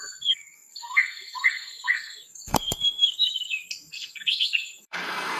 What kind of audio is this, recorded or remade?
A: remade